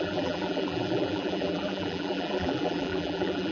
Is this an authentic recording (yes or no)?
no